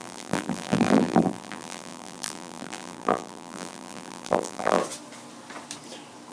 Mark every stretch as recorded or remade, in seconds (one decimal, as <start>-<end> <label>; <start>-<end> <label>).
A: 0.0-4.8 remade; 4.8-6.3 recorded